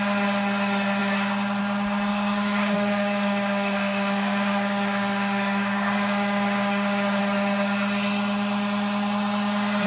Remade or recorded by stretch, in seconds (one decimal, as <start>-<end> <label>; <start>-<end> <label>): 0.0-2.1 recorded; 2.1-7.2 remade; 7.2-9.9 recorded